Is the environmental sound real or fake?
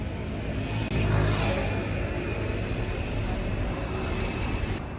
real